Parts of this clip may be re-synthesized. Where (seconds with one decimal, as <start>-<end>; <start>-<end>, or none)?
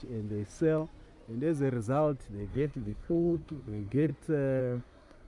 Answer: 2.5-4.1; 4.6-5.3